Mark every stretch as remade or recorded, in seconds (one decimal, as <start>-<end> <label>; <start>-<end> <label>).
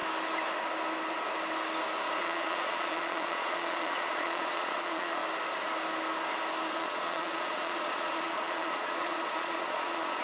0.0-2.2 recorded; 2.2-5.2 remade; 5.2-6.7 recorded; 6.7-10.2 remade